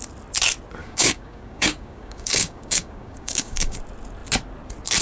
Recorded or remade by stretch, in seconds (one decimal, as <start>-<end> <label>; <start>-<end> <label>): 0.0-0.8 recorded; 0.8-3.8 remade; 3.8-5.0 recorded